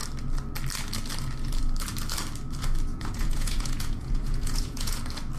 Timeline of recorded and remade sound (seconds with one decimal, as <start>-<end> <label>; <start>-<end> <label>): 0.0-2.9 recorded; 2.9-5.0 remade; 5.0-5.4 recorded